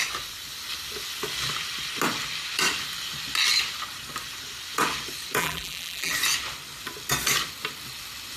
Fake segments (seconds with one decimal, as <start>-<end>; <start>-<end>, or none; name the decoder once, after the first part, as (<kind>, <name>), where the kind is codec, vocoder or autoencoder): 5.4-6.1 (vocoder, BigVGAN v2)

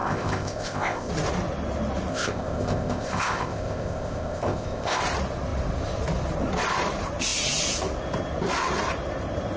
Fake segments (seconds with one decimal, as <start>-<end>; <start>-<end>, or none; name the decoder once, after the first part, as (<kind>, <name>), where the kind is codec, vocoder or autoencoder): 0.0-1.1 (codec, ZipCodec); 2.1-5.0